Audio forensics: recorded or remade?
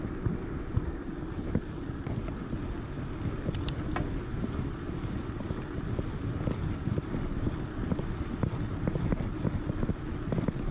recorded